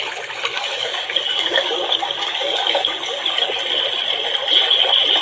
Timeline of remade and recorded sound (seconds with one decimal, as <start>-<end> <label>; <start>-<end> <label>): 0.0-0.5 recorded; 0.5-3.5 remade; 3.5-5.2 recorded